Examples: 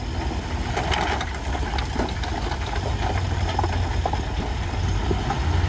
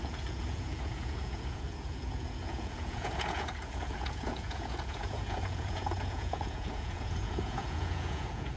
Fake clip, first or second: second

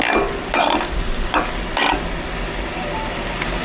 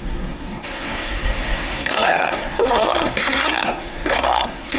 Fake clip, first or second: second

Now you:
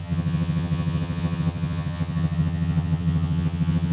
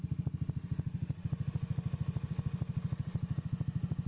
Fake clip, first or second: first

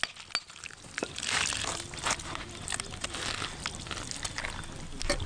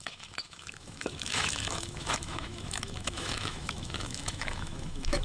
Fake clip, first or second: second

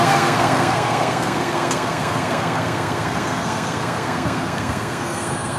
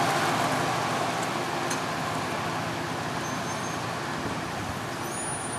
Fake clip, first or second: first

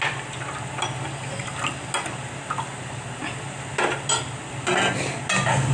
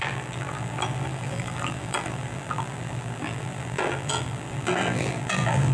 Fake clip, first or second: second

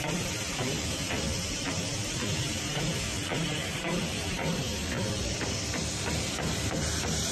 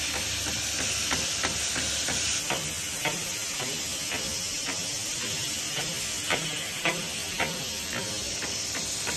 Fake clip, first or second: first